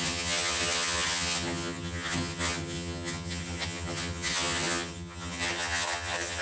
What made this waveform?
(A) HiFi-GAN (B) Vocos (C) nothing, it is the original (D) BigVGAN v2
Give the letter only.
A